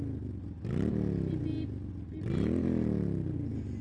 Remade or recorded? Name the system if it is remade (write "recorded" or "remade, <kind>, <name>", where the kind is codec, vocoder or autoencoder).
recorded